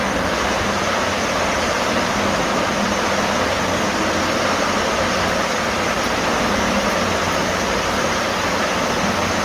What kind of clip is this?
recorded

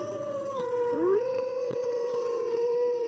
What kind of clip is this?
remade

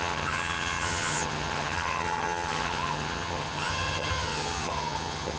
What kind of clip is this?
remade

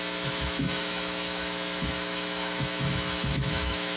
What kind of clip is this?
remade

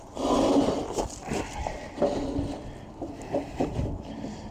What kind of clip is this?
recorded